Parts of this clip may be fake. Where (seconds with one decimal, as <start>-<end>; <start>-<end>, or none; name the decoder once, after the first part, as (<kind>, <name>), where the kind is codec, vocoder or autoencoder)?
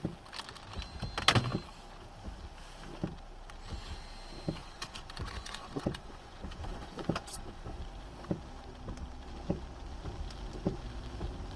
4.6-7.8 (vocoder, Vocos)